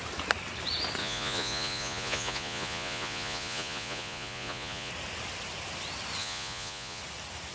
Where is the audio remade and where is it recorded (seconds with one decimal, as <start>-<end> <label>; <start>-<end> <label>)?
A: 0.0-1.0 recorded; 1.0-4.9 remade; 4.9-6.2 recorded; 6.2-7.0 remade; 7.0-7.5 recorded